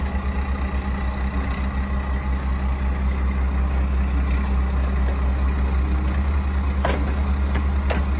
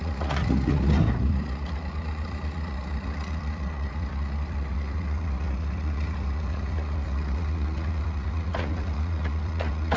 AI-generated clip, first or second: second